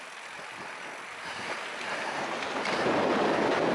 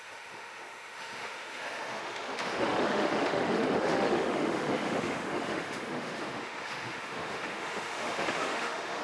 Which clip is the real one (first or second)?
first